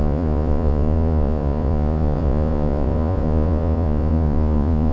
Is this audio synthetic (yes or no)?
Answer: yes